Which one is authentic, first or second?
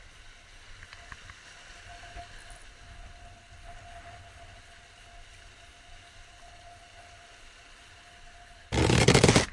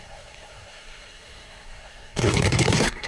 first